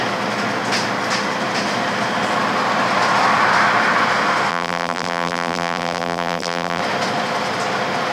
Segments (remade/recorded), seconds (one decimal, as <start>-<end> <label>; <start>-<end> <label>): 0.0-4.5 recorded; 4.5-6.8 remade; 6.8-8.1 recorded